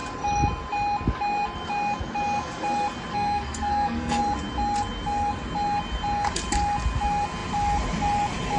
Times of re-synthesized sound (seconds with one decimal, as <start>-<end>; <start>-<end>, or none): 3.1-4.2